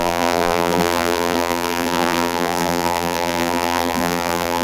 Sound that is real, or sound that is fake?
fake